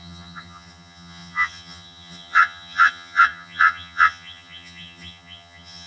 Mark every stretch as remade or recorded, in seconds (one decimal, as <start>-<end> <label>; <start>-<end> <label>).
0.0-5.9 remade

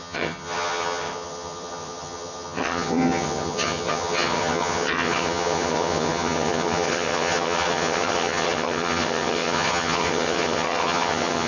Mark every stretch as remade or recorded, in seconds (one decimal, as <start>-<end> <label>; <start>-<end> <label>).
0.0-11.5 remade